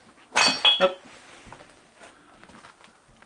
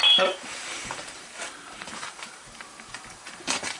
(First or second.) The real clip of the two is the first